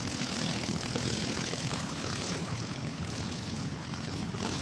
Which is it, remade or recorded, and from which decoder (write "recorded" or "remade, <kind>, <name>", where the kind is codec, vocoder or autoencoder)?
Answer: remade, codec, HILCodec